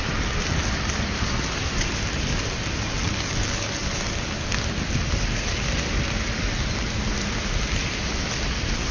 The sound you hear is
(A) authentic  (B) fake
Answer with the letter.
A